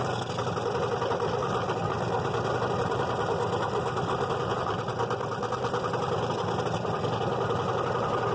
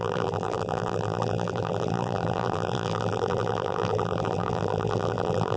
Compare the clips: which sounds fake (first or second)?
second